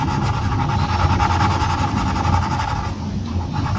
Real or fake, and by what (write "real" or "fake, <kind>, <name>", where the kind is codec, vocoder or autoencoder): real